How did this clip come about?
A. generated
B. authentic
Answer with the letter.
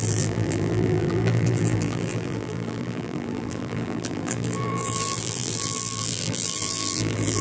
A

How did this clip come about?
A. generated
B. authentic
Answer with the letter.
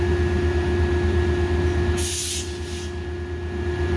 B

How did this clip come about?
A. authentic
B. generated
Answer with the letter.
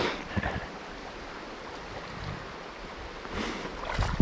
A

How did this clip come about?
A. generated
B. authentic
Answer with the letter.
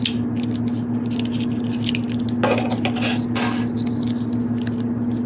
B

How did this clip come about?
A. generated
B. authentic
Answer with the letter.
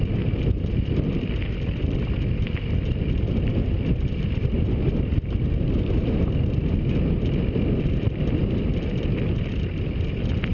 B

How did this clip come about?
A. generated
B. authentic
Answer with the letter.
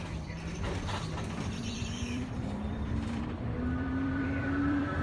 A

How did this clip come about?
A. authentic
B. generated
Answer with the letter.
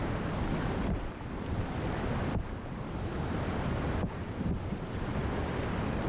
B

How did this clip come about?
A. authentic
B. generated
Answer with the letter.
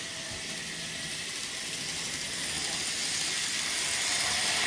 A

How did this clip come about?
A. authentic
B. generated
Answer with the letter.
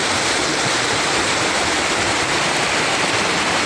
B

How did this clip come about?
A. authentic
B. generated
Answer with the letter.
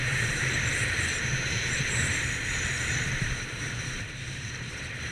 B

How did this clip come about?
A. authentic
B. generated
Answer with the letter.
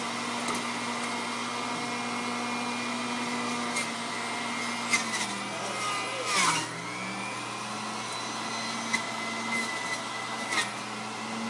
A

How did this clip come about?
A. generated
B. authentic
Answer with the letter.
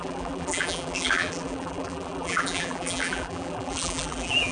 A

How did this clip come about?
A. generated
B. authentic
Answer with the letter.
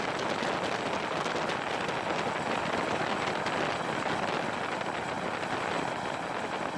B